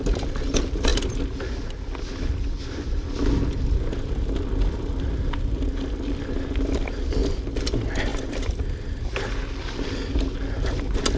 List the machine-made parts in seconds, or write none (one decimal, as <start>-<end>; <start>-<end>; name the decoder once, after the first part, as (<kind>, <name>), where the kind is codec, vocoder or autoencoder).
8.1-9.4 (vocoder, BigVGAN v2)